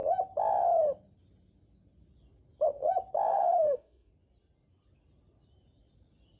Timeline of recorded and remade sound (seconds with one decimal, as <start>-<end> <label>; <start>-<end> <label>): 0.0-3.3 recorded; 3.3-4.1 remade; 4.1-6.4 recorded